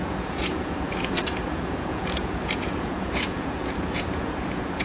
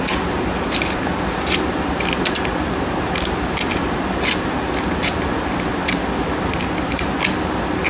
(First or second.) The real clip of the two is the second